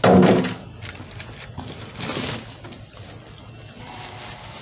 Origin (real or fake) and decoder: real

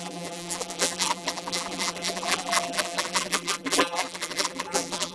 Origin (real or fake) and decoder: fake, vocoder, BigVGAN v2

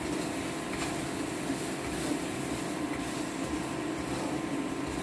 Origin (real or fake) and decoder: real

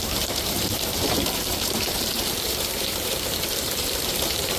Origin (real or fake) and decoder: fake, vocoder, BigVGAN v2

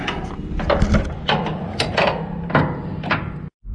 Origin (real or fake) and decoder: fake, vocoder, BigVGAN v2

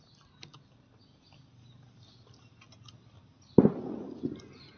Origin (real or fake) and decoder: real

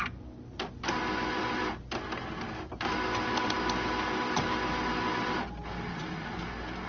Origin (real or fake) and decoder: real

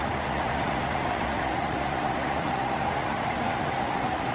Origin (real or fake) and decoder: fake, vocoder, Vocos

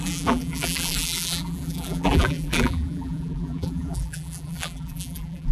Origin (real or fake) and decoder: fake, vocoder, BigVGAN v2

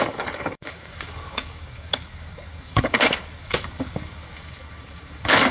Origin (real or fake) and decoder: fake, codec, DAC